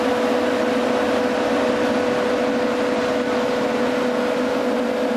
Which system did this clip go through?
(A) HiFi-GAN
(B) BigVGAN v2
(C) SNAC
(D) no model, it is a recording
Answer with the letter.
D